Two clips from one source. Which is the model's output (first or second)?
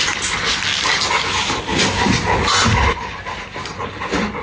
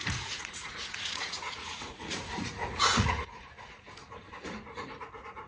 second